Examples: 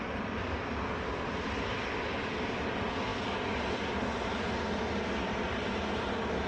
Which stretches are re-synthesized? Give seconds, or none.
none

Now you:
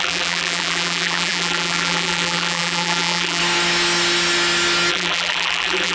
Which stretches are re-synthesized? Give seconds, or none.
0.0-3.4 (vocoder, BigVGAN v2); 4.9-5.9

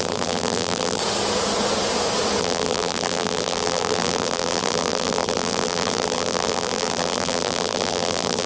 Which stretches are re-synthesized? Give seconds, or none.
0.0-1.0 (vocoder, BigVGAN v2); 2.4-8.5

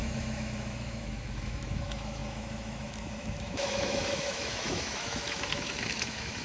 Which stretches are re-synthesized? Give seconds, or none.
0.0-6.4 (autoencoder, DAC-VAE)

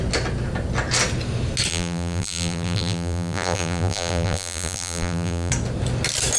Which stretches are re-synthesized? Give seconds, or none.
1.7-5.5 (vocoder, BigVGAN v2)

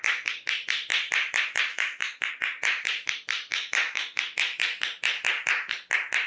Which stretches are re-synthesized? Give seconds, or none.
1.7-2.3 (autoencoder, DAC-VAE); 3.5-4.2

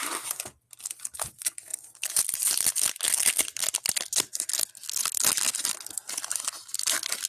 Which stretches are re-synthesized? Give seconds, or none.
none

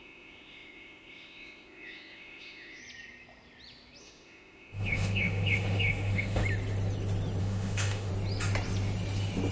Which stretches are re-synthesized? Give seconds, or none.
0.0-2.8 (autoencoder, DAC-VAE); 4.0-6.4; 7.4-8.1